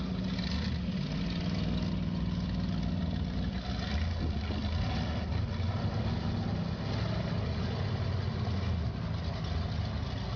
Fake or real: real